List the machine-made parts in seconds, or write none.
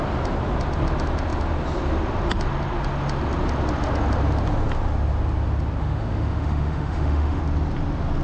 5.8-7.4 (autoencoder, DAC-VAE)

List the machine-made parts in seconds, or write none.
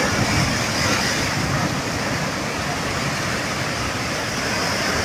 none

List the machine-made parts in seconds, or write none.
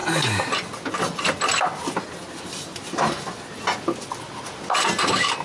none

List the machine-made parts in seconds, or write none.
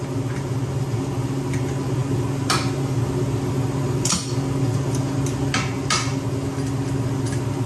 none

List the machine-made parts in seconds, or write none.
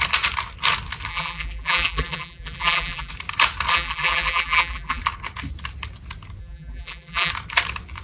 1.1-3.1 (vocoder, BigVGAN v2); 3.7-5.0; 6.4-7.3